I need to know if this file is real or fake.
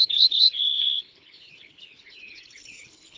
fake